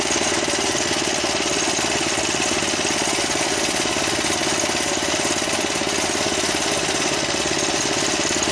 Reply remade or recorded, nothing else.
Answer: recorded